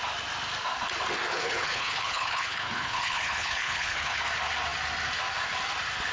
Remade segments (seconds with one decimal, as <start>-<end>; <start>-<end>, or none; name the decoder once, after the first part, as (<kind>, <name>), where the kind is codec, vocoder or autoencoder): 1.3-4.2 (codec, HILCodec)